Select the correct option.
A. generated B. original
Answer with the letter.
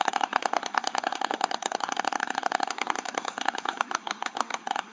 A